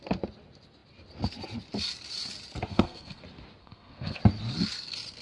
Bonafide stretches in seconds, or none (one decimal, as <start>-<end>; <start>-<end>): 0.0-2.7; 3.2-3.6; 4.2-5.2